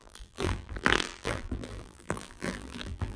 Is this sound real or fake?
fake